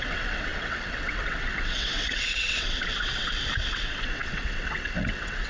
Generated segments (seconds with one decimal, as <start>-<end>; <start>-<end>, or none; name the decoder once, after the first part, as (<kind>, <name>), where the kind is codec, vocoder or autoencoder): 0.0-5.5 (vocoder, WaveNeXt)

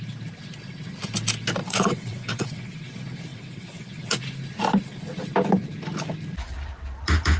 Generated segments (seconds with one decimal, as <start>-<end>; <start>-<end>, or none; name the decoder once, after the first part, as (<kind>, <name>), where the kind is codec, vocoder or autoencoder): 1.6-2.9 (vocoder, WaveNeXt); 3.3-4.2